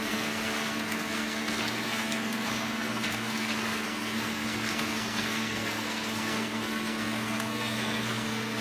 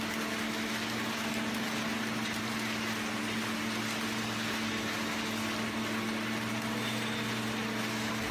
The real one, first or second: second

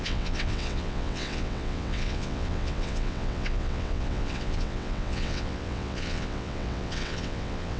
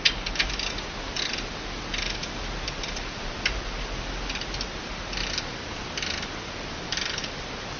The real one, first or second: second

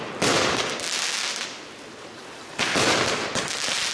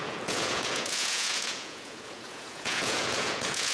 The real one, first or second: first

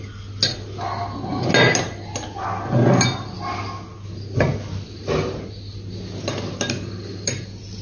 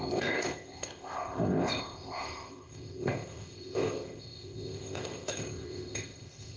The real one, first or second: first